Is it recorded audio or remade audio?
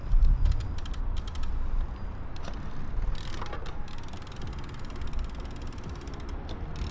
recorded